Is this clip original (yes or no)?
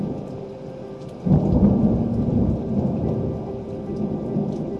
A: yes